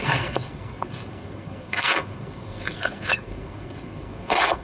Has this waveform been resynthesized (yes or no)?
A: yes